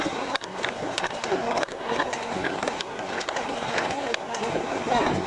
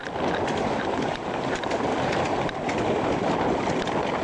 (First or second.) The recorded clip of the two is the second